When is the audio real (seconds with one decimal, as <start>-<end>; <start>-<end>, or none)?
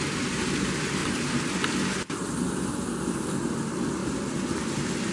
0.0-5.1